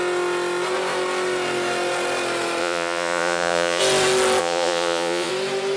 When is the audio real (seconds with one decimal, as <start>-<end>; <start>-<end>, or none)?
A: 0.0-2.6; 3.8-4.4; 5.3-5.8